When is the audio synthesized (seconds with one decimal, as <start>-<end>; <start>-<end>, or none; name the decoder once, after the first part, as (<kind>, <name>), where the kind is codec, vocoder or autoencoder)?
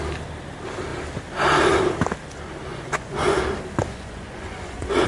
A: 2.7-3.4 (vocoder, Vocos); 3.9-5.1